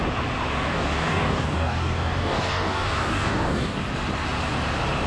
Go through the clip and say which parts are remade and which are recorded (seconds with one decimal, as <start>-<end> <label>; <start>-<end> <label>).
0.0-0.7 recorded; 0.7-3.8 remade; 3.8-5.1 recorded